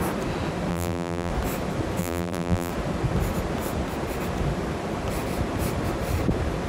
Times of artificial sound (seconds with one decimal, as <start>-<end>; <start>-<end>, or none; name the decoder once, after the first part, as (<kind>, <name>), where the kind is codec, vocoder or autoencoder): 0.7-1.3 (vocoder, BigVGAN v2); 2.0-2.7